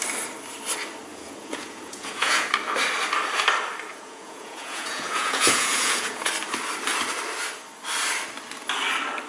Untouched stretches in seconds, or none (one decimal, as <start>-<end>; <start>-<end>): 0.0-1.1; 2.5-3.9; 6.3-9.3

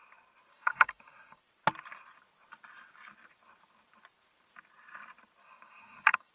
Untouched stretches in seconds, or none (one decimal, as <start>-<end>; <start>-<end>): 0.0-0.5; 1.4-5.4

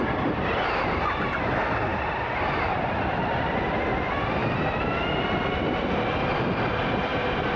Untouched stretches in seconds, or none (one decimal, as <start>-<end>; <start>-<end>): 0.0-7.6